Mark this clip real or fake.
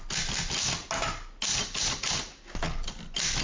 real